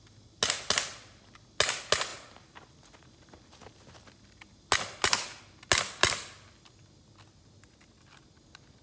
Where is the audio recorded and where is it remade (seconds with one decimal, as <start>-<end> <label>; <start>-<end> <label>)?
0.0-8.8 recorded

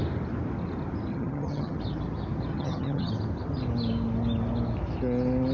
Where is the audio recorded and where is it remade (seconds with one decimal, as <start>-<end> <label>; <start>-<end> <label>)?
0.0-1.1 recorded; 1.1-1.8 remade; 1.8-2.5 recorded; 2.5-3.1 remade; 3.1-5.5 recorded

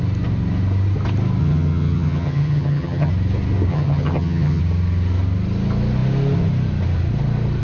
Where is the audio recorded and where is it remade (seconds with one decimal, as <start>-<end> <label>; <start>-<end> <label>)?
0.0-1.4 recorded; 1.4-3.1 remade; 3.1-3.7 recorded; 3.7-4.6 remade; 4.6-7.6 recorded